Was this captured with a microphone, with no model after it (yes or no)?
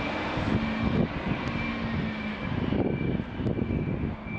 yes